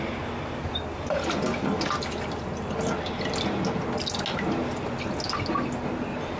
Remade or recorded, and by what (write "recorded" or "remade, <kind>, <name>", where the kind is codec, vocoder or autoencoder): recorded